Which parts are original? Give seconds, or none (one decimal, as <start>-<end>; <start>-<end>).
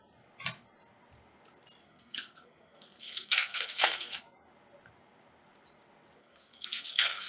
0.0-1.8; 4.2-6.2